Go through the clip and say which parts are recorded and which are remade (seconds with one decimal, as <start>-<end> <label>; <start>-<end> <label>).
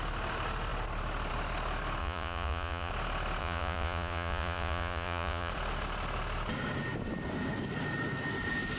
0.0-2.0 recorded; 2.0-2.9 remade; 2.9-3.4 recorded; 3.4-5.5 remade; 5.5-8.8 recorded